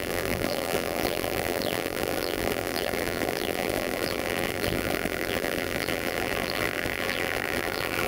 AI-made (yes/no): yes